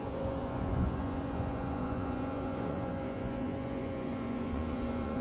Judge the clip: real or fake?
fake